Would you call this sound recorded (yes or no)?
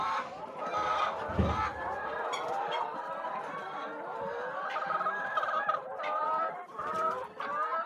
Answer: no